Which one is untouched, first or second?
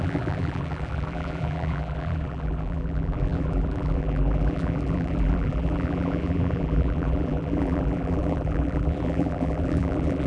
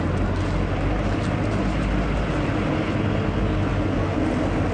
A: second